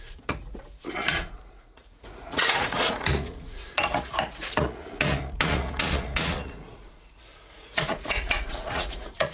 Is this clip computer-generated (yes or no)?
yes